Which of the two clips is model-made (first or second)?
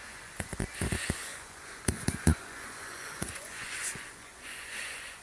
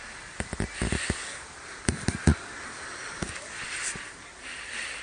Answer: first